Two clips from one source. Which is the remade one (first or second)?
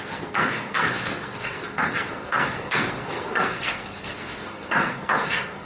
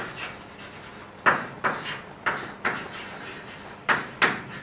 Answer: first